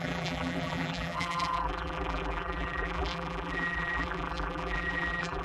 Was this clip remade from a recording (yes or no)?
yes